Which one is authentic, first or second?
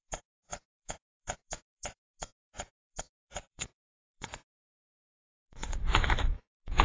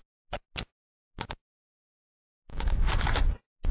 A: second